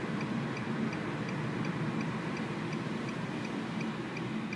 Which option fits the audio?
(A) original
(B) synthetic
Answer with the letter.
A